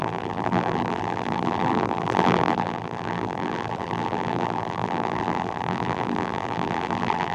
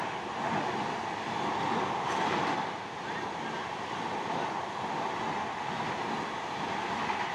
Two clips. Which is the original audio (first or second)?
second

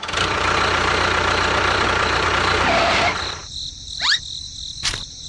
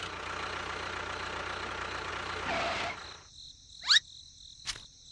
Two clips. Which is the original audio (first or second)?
second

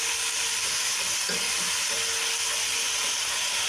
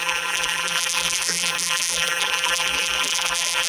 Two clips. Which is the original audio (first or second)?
first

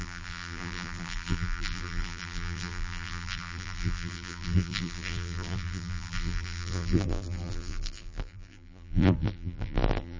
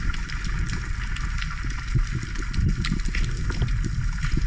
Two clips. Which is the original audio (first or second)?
second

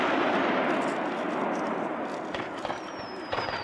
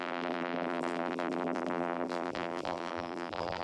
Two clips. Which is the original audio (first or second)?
first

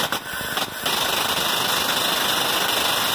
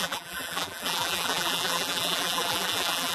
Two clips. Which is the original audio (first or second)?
first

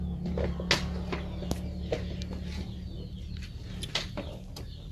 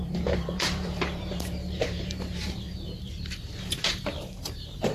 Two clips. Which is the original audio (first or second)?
first